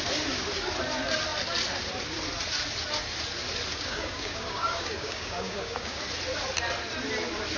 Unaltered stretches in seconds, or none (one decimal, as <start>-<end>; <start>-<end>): 0.0-3.7; 6.0-7.6